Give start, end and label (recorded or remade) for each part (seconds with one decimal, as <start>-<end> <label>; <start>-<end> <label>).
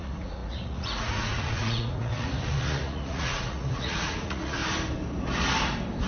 0.0-4.6 remade; 4.6-6.1 recorded